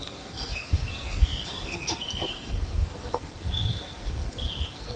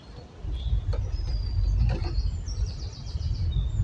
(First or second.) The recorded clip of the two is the second